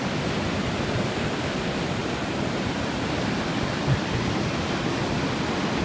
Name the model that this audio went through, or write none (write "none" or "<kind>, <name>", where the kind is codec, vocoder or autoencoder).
none